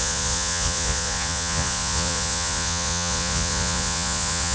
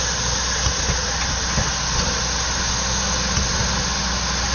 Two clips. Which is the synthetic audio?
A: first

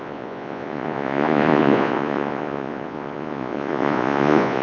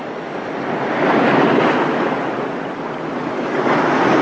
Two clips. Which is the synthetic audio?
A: first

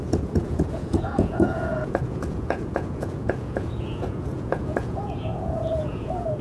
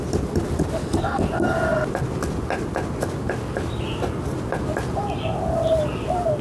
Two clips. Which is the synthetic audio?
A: first